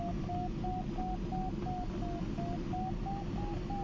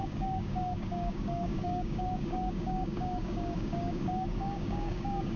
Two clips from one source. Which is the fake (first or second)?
second